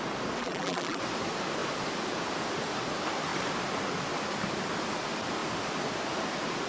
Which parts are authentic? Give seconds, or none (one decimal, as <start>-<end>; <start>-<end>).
0.0-0.4; 1.0-6.7